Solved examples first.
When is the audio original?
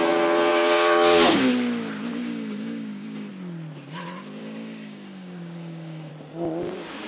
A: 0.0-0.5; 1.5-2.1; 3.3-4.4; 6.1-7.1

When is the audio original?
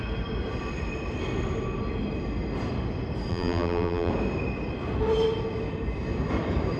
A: 0.0-3.3; 4.1-6.8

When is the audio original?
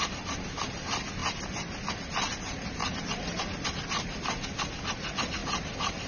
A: 0.0-2.8; 3.4-6.1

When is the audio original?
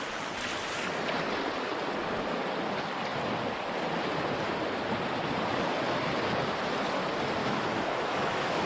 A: 0.0-7.4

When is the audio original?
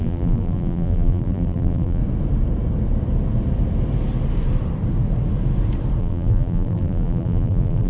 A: 2.0-6.0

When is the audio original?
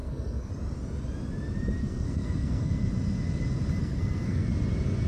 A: 0.5-1.8; 2.9-3.8; 4.5-5.1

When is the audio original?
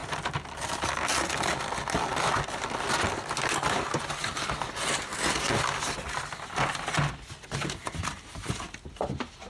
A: 0.0-9.5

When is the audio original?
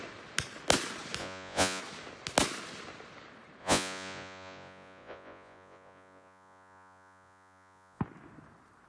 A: 0.0-1.2; 1.8-3.6; 8.0-8.9